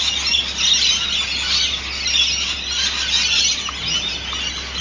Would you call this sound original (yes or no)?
yes